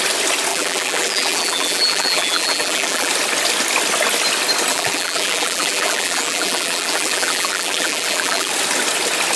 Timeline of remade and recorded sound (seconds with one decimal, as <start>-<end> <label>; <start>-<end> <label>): 0.0-0.5 recorded; 0.5-3.1 remade; 3.1-4.7 recorded; 4.7-8.5 remade; 8.5-9.4 recorded